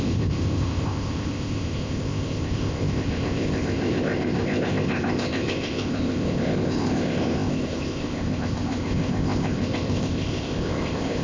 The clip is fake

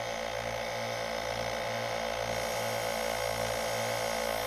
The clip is real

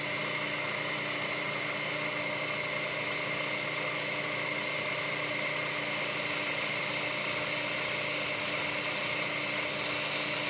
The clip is real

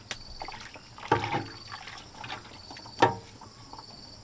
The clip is real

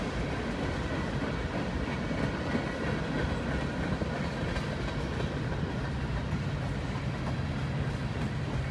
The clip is real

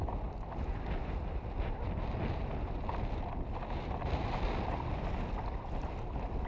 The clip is real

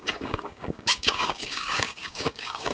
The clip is fake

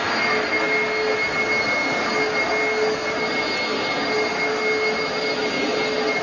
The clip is real